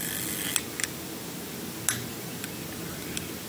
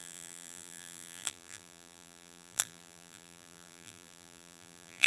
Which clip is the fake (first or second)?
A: second